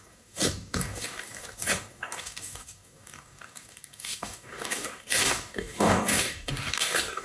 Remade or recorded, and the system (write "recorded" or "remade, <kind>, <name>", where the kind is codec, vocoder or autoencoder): remade, codec, DAC